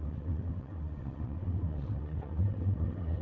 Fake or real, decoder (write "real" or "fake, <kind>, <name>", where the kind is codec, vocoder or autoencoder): fake, vocoder, WaveNeXt